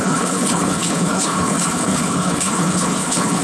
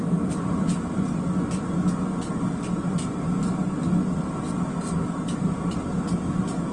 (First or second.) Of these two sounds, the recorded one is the second